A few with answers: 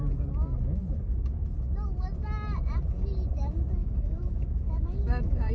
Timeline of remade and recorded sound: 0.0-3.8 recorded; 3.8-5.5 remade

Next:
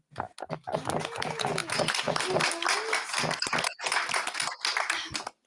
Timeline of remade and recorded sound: 0.0-5.5 recorded

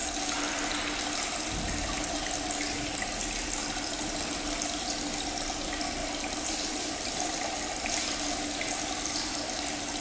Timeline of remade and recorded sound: 0.0-10.0 recorded

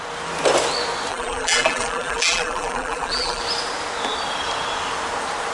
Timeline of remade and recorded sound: 0.0-1.1 recorded; 1.1-3.4 remade; 3.4-5.5 recorded

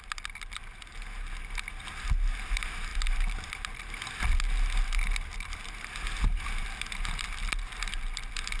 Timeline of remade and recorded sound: 0.0-8.6 recorded

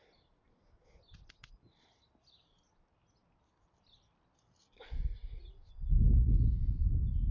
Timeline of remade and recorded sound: 0.0-7.3 recorded

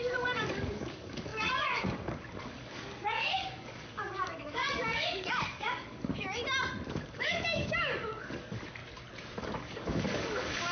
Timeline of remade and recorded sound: 0.0-6.4 remade; 6.4-6.9 recorded; 6.9-8.8 remade; 8.8-9.4 recorded; 9.4-10.7 remade

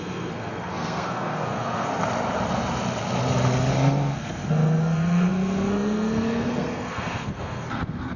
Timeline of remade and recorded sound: 0.0-1.9 remade; 1.9-3.7 recorded; 3.7-8.2 remade